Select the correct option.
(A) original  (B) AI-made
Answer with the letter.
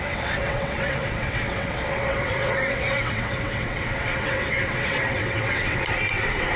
B